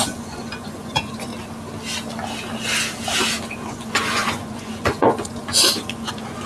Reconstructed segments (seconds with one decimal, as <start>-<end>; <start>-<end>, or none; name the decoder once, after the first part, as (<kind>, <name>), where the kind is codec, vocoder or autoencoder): 0.0-1.3 (vocoder, Vocos); 3.4-6.5